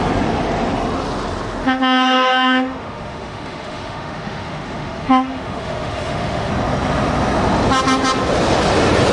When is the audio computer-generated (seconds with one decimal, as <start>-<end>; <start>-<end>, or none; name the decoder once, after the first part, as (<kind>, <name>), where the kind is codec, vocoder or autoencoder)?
1.6-6.5 (autoencoder, DAC-VAE)